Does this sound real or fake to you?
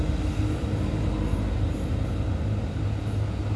real